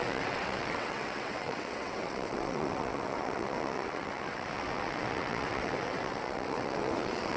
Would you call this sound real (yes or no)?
no